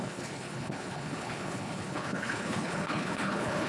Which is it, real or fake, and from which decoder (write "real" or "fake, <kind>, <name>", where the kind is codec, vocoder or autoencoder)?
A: fake, codec, HILCodec